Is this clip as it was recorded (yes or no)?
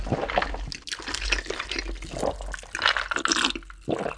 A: yes